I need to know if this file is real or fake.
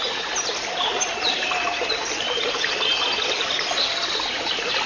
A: real